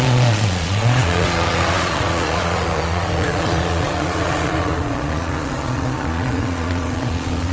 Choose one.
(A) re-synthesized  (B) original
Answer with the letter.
A